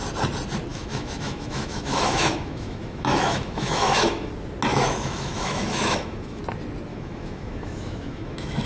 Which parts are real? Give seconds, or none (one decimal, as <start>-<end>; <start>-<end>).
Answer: 0.0-0.7; 4.3-4.7; 6.4-6.9